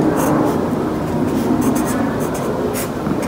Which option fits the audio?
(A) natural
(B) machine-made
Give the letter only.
A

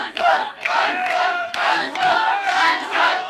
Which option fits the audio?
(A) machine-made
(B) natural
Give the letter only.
A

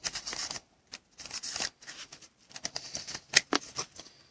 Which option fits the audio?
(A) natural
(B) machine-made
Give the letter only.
A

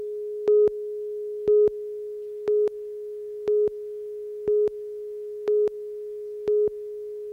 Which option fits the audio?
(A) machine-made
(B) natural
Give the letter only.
B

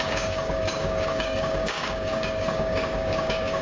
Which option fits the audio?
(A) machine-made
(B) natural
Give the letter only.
A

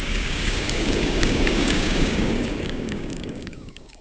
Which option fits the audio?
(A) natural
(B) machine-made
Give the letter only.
B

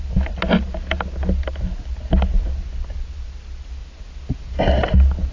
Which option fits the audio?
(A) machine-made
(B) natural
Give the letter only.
B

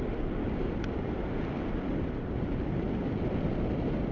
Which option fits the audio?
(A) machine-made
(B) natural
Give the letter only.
B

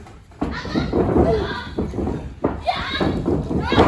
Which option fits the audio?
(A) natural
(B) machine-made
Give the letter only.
A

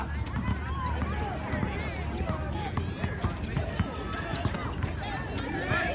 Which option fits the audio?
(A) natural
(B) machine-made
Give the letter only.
A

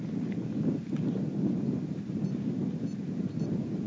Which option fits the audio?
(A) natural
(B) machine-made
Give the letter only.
A